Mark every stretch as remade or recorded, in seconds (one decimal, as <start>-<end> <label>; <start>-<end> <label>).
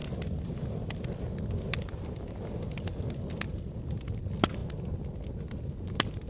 0.0-6.3 recorded